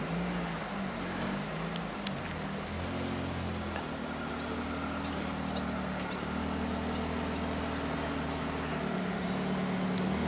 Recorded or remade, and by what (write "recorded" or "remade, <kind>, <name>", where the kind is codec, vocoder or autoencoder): recorded